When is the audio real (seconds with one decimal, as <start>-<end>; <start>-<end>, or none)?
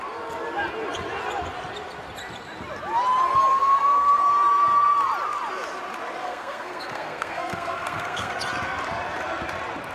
0.0-3.5; 4.2-6.2; 8.3-9.9